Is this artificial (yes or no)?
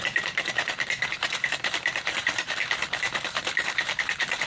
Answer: yes